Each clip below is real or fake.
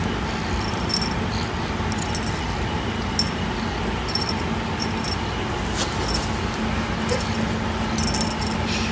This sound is real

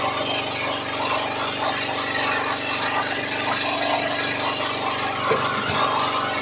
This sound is real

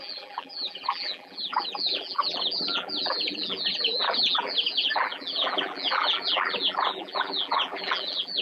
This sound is fake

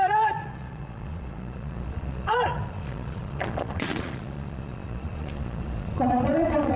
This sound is fake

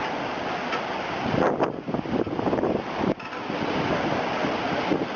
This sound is real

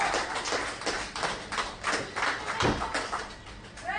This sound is real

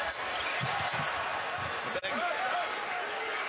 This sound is real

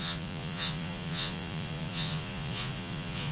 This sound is fake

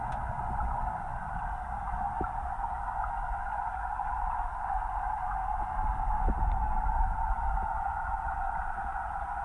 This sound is real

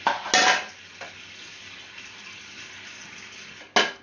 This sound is real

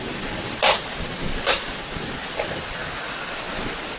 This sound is fake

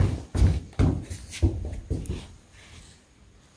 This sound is real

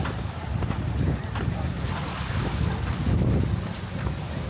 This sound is real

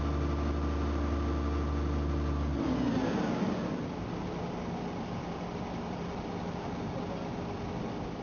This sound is real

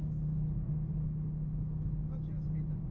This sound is real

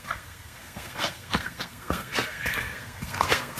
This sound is fake